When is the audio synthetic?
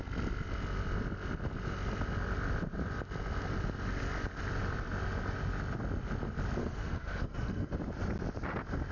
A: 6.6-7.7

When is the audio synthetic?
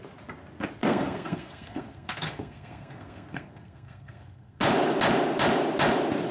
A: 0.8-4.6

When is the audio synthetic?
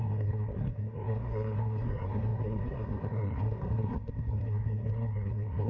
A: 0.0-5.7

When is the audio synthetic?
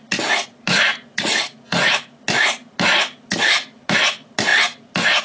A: none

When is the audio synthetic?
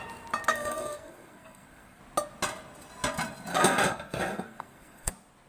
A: 0.5-2.0; 3.5-5.1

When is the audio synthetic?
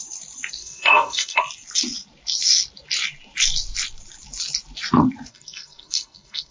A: 0.6-1.4; 5.3-6.5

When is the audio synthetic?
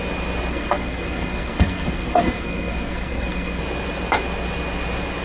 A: 0.5-3.6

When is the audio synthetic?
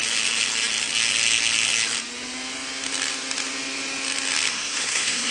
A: 4.5-5.3